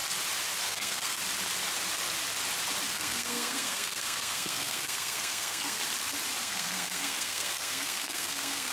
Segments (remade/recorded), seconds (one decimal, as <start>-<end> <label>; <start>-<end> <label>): 0.0-0.6 recorded; 0.6-1.2 remade; 1.2-2.9 recorded; 2.9-5.8 remade; 5.8-6.4 recorded; 6.4-8.7 remade